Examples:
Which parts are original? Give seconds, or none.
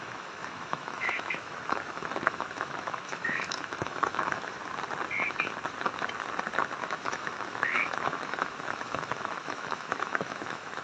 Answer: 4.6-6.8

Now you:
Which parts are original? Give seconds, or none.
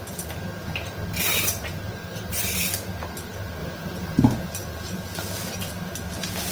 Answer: 0.0-1.3; 2.3-3.6; 4.2-6.5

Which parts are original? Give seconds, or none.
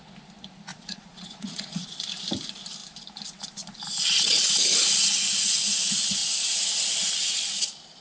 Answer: 0.0-0.7; 2.0-8.0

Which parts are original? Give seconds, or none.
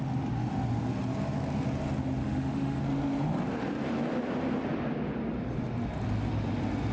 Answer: 0.0-2.2; 2.8-6.9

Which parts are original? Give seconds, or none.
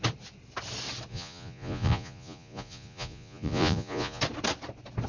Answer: 0.0-1.1; 4.2-5.1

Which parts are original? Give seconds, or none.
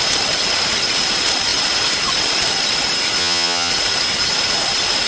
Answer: 0.0-3.2; 3.7-5.1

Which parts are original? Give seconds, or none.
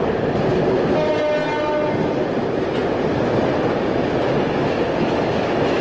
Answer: 0.0-5.8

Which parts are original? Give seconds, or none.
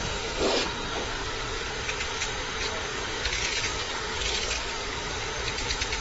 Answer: 0.0-1.1; 1.7-2.9; 5.3-6.0